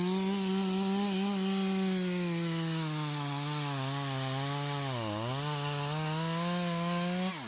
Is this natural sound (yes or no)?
yes